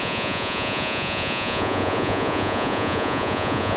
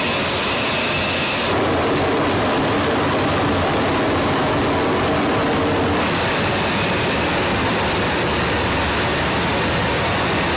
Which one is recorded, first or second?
second